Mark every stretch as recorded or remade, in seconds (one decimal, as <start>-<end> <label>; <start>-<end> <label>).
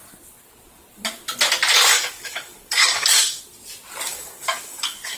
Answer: 0.0-1.9 recorded; 1.9-3.4 remade; 3.4-4.1 recorded; 4.1-5.2 remade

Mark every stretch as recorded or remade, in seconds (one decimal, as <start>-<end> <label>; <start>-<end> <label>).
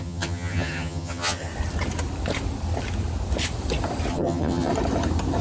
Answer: 0.0-1.5 remade; 1.5-4.1 recorded; 4.1-4.7 remade; 4.7-5.4 recorded